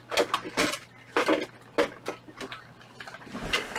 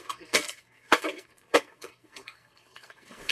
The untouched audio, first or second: first